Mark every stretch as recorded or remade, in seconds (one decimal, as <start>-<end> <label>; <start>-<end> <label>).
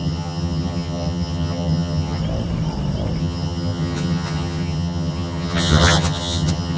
0.0-2.2 remade; 2.2-3.2 recorded; 3.2-6.8 remade